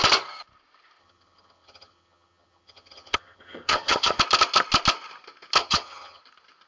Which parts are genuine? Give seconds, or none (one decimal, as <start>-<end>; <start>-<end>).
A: 0.0-1.0; 4.2-5.6; 6.2-6.7